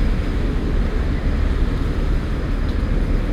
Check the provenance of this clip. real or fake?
real